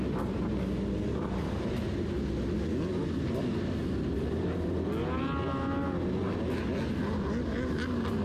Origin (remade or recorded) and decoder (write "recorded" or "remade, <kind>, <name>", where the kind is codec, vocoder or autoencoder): recorded